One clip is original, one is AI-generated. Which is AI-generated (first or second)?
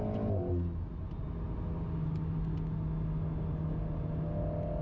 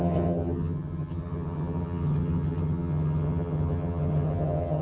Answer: second